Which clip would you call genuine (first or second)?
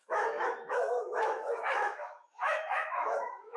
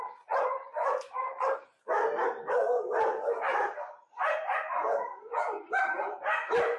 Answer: second